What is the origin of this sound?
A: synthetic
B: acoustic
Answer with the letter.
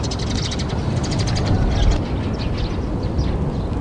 B